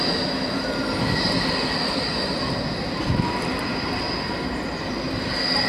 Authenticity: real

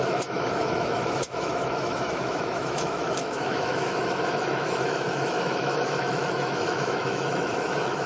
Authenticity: fake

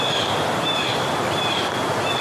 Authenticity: real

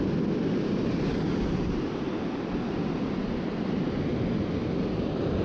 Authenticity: real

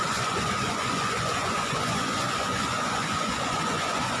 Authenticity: fake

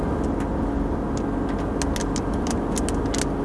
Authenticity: real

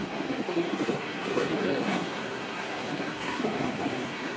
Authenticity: fake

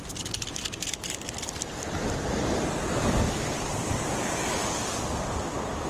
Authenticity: real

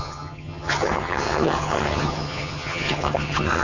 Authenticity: fake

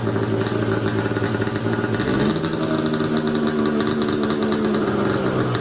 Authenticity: real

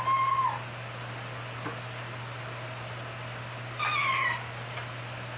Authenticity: real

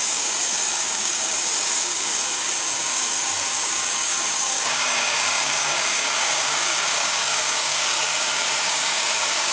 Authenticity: fake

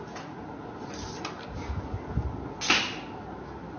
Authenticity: real